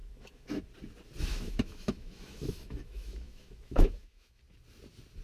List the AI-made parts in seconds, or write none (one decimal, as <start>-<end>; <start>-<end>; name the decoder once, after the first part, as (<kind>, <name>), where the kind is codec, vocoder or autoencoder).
0.0-0.6 (autoencoder, DAC-VAE); 1.3-4.4